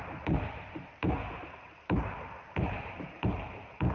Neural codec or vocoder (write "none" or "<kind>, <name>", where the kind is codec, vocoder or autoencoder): vocoder, BigVGAN v2